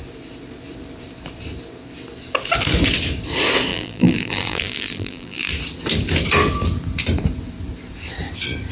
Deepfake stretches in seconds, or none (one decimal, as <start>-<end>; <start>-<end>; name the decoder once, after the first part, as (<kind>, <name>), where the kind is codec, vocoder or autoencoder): 3.7-5.5 (vocoder, BigVGAN v2)